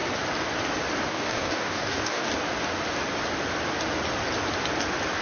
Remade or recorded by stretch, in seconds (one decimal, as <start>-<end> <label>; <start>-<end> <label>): 0.0-1.1 recorded; 1.1-2.3 remade; 2.3-5.2 recorded